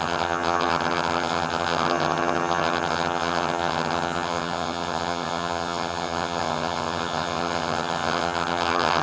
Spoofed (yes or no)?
yes